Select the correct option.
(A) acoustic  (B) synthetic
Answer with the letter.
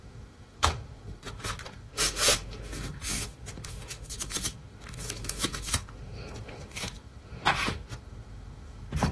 B